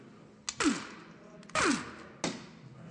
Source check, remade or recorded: recorded